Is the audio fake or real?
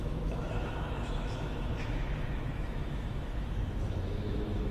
fake